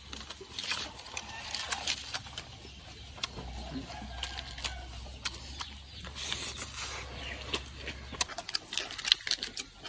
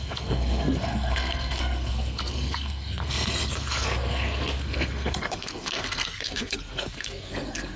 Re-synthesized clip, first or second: second